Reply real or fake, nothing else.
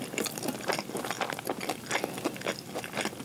real